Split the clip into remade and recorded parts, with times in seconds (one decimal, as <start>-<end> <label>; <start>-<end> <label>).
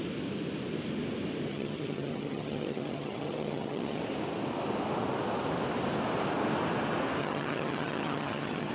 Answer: 0.0-1.5 recorded; 1.5-4.0 remade; 4.0-7.2 recorded; 7.2-8.7 remade